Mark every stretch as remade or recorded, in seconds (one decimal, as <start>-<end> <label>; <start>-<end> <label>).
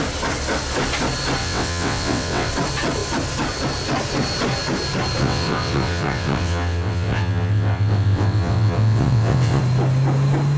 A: 0.0-1.4 recorded; 1.4-2.5 remade; 2.5-5.2 recorded; 5.2-9.6 remade; 9.6-10.6 recorded